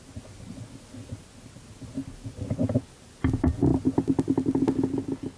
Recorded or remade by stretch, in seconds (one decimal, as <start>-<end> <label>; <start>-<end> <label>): 0.0-5.4 recorded